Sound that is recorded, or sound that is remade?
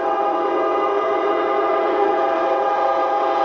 remade